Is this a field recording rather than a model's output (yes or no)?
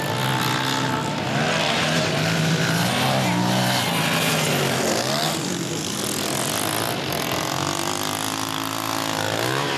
yes